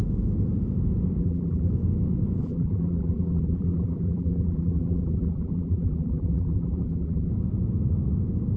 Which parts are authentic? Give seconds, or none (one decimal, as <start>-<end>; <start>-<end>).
0.0-1.2; 1.7-2.4; 7.3-8.6